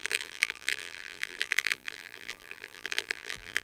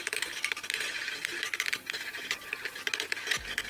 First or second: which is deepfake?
first